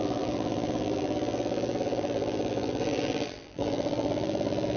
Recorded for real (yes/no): no